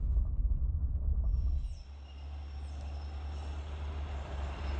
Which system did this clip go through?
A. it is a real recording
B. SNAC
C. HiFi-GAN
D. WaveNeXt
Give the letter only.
A